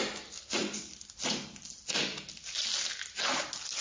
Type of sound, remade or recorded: recorded